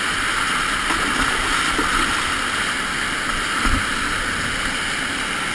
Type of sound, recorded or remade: recorded